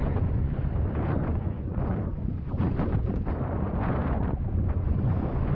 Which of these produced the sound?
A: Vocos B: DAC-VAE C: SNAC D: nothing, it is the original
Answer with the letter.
A